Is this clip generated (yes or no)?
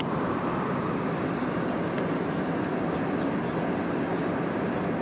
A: no